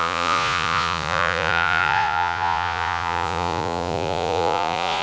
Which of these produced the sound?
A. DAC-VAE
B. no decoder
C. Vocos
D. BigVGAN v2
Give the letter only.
C